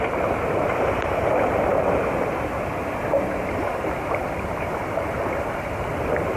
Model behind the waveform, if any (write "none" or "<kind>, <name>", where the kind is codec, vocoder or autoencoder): none